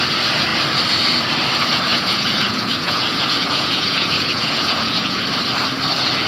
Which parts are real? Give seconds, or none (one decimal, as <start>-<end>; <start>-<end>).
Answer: 0.0-1.9; 5.2-6.3